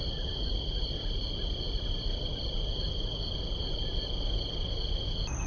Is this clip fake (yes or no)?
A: no